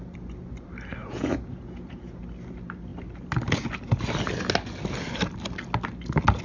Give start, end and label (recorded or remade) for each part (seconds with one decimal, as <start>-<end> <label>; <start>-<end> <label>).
0.0-1.0 recorded; 1.0-2.2 remade; 2.2-6.4 recorded